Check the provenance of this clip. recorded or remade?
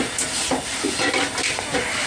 recorded